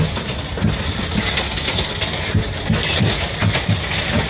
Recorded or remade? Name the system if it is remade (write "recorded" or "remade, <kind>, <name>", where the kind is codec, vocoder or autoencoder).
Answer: recorded